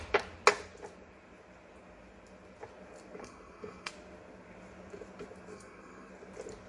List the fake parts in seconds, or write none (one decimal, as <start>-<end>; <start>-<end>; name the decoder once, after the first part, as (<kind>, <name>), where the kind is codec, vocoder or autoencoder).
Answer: 3.2-3.9 (codec, SNAC); 5.5-6.1